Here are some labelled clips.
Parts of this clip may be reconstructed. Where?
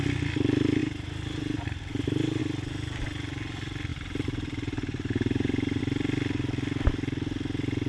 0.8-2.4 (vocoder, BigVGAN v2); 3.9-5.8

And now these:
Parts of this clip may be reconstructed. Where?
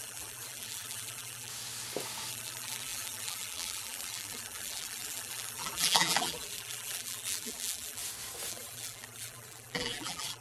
0.0-1.5 (vocoder, BigVGAN v2); 2.3-8.0; 8.5-10.4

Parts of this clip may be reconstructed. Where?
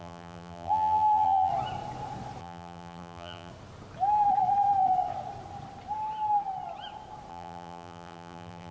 0.0-1.5 (vocoder, BigVGAN v2); 2.4-3.5; 7.3-8.7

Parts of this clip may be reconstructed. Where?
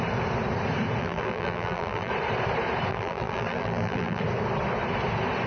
1.0-2.1 (vocoder, BigVGAN v2); 2.9-4.2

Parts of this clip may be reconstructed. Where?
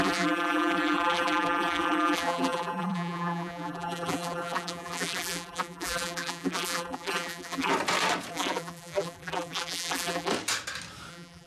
0.0-7.7 (vocoder, BigVGAN v2); 8.3-10.3; 11.1-11.5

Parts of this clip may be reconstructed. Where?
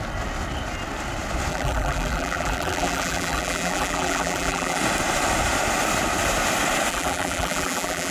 1.5-4.8 (vocoder, BigVGAN v2); 6.9-8.1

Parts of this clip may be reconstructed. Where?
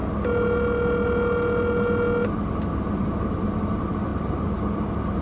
3.1-5.2 (vocoder, BigVGAN v2)